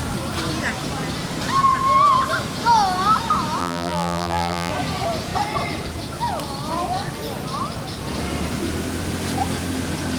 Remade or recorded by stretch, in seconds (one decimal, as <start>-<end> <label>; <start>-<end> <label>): 0.0-3.6 recorded; 3.6-4.7 remade; 4.7-10.2 recorded